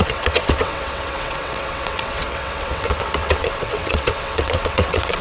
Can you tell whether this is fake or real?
fake